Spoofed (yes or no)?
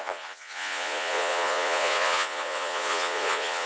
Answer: yes